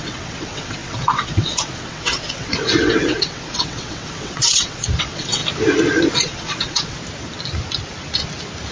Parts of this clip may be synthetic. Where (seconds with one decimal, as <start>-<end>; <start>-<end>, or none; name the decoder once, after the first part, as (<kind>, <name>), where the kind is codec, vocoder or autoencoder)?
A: 0.0-5.4 (vocoder, WaveNeXt); 6.2-7.0